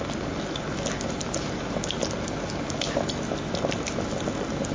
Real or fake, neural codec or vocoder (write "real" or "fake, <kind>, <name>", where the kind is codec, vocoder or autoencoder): real